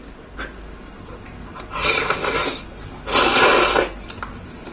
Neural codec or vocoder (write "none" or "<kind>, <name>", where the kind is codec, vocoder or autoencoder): none